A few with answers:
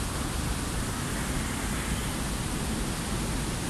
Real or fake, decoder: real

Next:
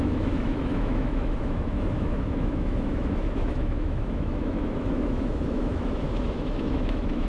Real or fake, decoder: fake, autoencoder, DAC-VAE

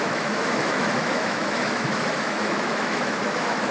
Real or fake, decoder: fake, autoencoder, DAC-VAE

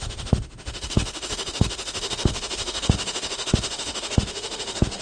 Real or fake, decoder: fake, autoencoder, DAC-VAE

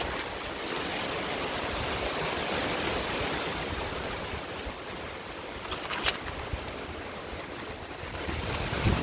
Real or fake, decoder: real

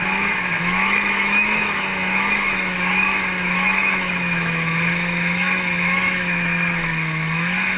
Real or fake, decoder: fake, autoencoder, DAC-VAE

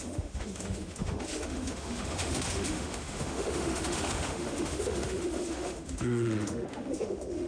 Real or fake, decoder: fake, autoencoder, DAC-VAE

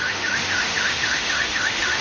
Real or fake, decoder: fake, autoencoder, DAC-VAE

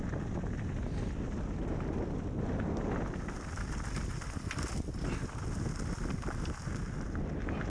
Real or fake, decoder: real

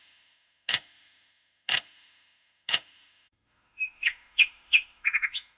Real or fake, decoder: fake, autoencoder, DAC-VAE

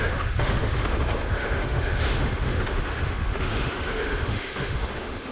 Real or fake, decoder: fake, autoencoder, DAC-VAE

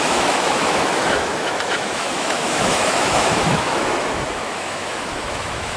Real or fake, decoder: fake, autoencoder, DAC-VAE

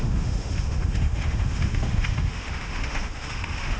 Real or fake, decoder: fake, autoencoder, DAC-VAE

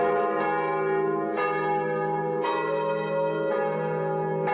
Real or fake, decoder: real